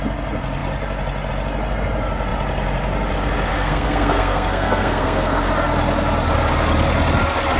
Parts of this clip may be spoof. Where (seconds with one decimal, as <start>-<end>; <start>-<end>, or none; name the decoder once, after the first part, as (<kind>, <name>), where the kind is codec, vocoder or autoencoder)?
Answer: 3.5-5.5 (codec, SNAC)